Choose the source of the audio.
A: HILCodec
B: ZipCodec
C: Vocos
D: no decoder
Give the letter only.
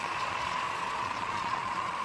C